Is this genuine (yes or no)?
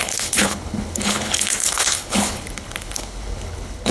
no